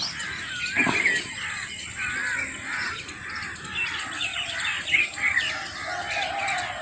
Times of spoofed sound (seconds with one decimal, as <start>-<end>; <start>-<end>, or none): 4.3-6.3

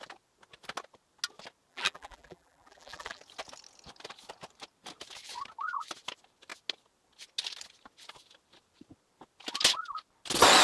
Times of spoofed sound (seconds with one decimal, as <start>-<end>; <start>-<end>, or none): 1.7-3.2

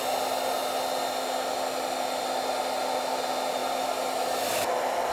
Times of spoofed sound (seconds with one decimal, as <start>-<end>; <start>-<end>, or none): 3.6-5.1

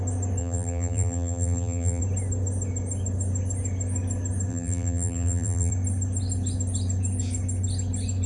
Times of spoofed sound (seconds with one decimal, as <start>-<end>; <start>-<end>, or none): 0.4-2.0; 4.5-5.7

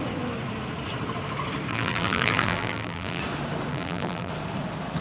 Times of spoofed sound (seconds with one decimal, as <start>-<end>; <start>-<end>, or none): 1.7-3.2; 3.7-4.3

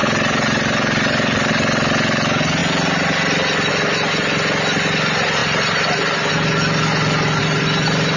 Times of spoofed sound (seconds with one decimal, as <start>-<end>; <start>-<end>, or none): 0.0-1.5; 5.4-6.3; 7.4-8.2

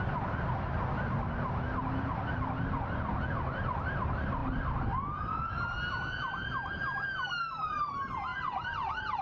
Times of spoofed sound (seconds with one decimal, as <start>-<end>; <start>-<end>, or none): 8.3-9.2